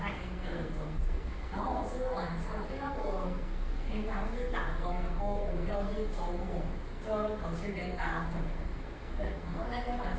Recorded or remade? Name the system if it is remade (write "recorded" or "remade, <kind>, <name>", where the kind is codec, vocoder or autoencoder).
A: remade, codec, SNAC